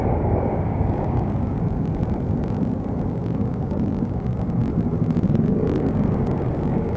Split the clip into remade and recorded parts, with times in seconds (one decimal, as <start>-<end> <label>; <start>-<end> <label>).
0.0-1.9 remade; 1.9-3.1 recorded; 3.1-4.6 remade; 4.6-5.3 recorded; 5.3-7.0 remade